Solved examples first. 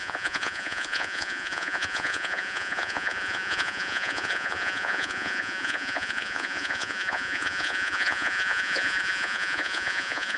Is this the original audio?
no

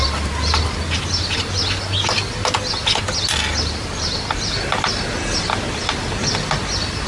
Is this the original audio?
yes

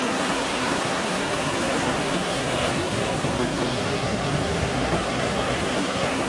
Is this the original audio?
no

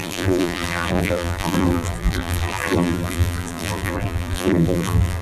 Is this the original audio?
no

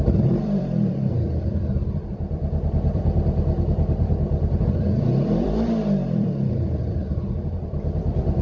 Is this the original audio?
no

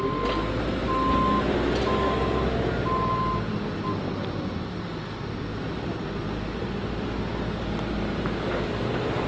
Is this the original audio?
yes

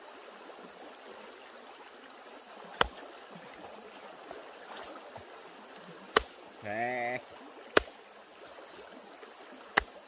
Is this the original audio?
yes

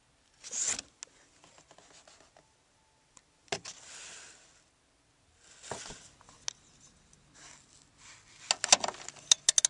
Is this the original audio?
yes